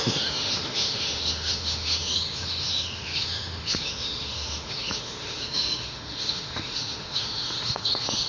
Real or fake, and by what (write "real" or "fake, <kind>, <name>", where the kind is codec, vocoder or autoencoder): fake, autoencoder, DAC-VAE